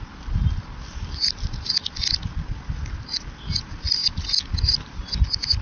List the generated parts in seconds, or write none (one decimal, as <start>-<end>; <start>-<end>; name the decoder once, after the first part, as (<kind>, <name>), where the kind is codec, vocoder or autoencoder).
none